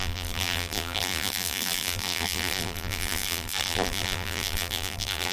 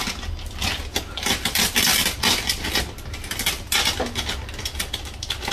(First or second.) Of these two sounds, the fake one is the first